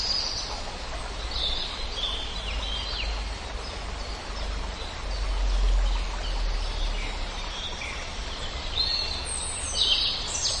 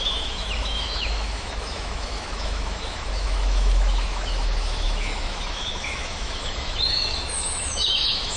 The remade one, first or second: second